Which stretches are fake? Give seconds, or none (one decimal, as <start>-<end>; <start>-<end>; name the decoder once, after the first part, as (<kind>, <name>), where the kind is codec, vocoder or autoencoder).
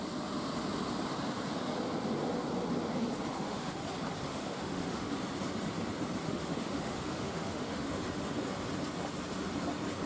3.3-3.8 (autoencoder, DAC-VAE); 4.3-5.1; 6.2-8.3